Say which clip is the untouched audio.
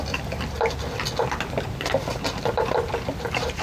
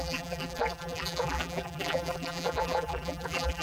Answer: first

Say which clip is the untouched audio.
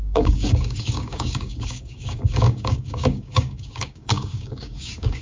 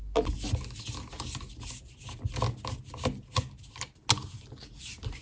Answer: second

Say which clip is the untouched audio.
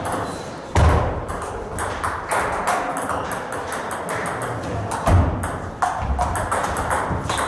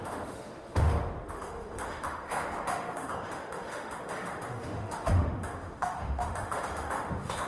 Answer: first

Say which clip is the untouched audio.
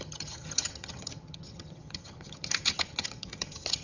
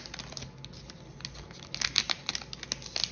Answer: second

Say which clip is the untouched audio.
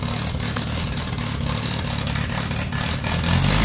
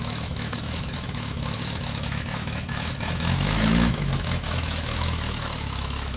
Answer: first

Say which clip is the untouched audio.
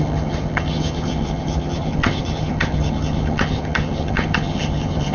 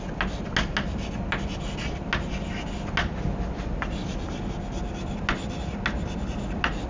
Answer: second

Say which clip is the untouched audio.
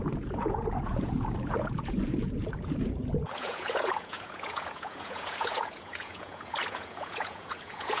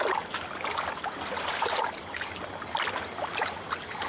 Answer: second